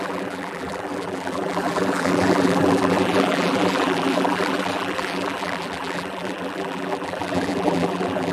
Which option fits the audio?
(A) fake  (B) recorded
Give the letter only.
A